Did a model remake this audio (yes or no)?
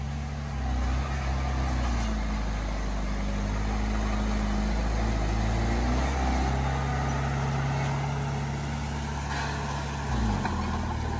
no